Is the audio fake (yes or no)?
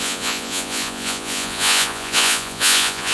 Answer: yes